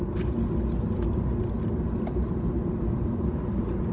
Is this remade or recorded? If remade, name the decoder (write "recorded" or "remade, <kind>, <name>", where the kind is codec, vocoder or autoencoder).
recorded